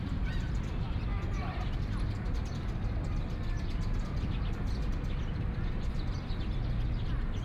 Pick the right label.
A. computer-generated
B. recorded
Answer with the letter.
A